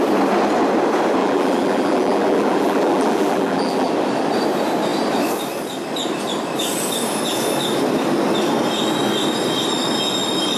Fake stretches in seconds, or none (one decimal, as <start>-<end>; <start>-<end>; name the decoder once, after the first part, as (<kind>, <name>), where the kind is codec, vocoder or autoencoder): 1.2-3.9 (vocoder, BigVGAN v2)